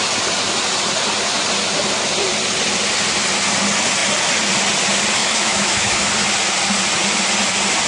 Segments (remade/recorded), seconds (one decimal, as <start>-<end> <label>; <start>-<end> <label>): 0.0-5.2 recorded; 5.2-6.1 remade; 6.1-7.9 recorded